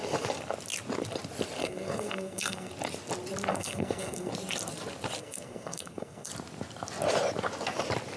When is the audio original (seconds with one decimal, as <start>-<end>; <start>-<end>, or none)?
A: 0.0-1.6; 2.7-3.5; 4.3-5.2; 6.3-8.2